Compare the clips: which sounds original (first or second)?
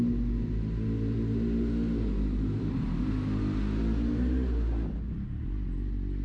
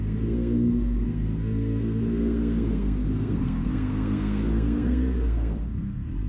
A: first